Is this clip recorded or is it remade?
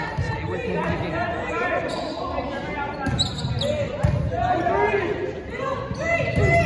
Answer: recorded